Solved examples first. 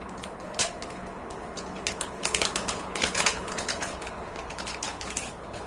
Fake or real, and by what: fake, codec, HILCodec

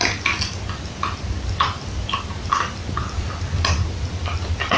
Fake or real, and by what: real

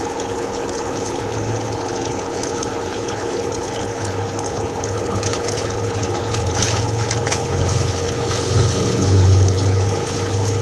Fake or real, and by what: fake, codec, HILCodec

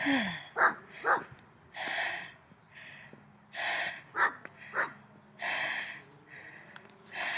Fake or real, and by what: real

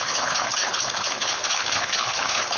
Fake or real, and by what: fake, codec, HILCodec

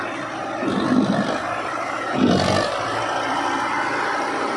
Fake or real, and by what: real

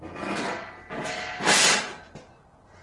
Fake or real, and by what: real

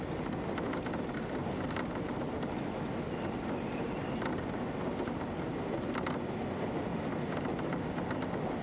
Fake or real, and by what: real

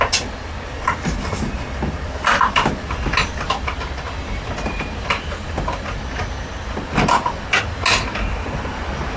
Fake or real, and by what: real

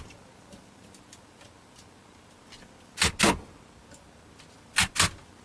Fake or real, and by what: real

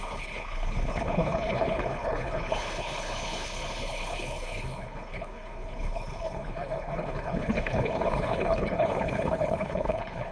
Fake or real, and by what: fake, codec, HILCodec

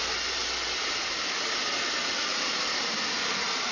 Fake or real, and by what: real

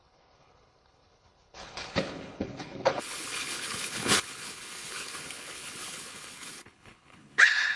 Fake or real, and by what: fake, codec, HILCodec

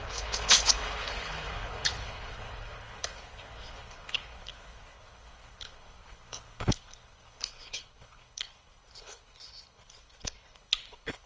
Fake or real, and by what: fake, codec, HILCodec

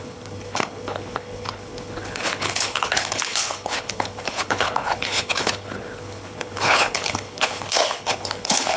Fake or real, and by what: fake, codec, HILCodec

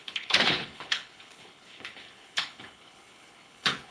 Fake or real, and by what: fake, codec, HILCodec